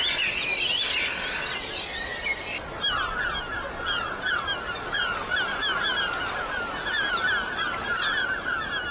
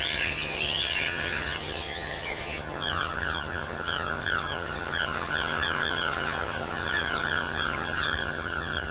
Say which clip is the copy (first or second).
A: second